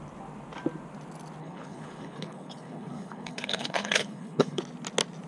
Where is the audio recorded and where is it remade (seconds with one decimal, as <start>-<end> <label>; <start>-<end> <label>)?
0.0-1.4 recorded; 1.4-4.6 remade; 4.6-5.3 recorded